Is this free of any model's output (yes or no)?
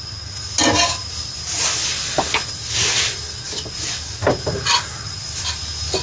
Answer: yes